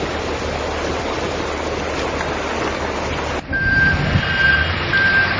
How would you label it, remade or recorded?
recorded